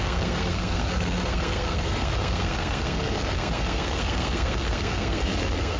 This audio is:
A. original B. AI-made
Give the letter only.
B